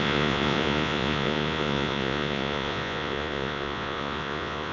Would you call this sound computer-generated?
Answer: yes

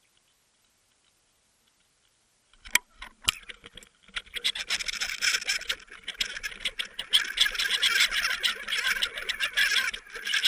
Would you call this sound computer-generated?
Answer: no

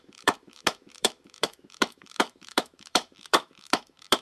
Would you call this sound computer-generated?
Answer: yes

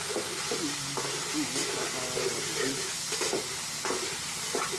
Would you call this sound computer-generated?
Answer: no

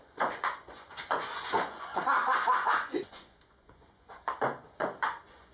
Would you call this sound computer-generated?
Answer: yes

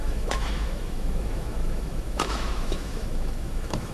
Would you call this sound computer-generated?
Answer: yes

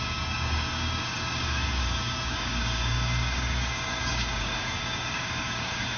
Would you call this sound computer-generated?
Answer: yes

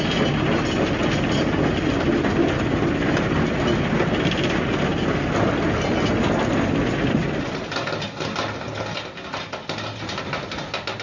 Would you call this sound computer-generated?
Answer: no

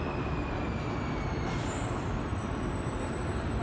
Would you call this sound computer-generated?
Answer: yes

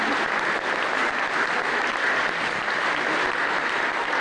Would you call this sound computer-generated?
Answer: no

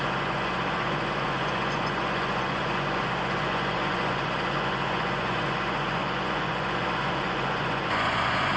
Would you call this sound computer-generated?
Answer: yes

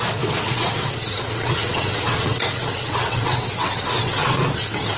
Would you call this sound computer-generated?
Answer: yes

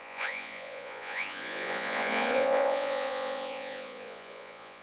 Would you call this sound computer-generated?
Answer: yes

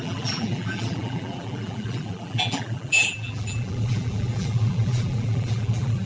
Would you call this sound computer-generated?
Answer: yes